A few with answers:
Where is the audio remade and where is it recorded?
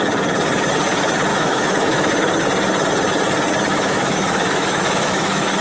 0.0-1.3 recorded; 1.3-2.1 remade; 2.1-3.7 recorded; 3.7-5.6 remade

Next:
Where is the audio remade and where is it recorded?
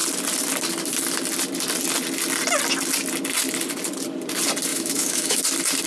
0.0-4.7 recorded; 4.7-5.4 remade; 5.4-5.9 recorded